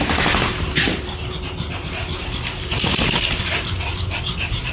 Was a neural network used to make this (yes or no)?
no